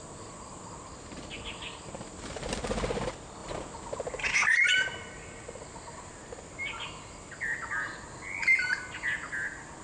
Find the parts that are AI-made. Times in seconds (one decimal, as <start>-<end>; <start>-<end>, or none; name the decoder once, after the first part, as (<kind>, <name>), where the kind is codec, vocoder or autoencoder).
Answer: none